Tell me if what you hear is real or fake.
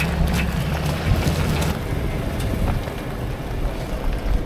real